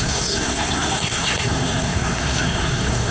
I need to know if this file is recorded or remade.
remade